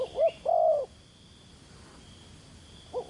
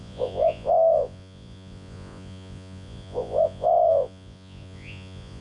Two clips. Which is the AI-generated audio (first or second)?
second